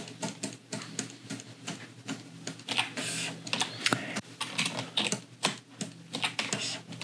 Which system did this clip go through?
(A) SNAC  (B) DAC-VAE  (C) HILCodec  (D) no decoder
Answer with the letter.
D